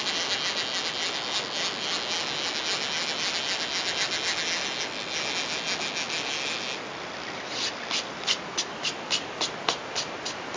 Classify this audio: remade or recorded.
recorded